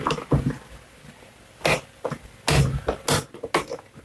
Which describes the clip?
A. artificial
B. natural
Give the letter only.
B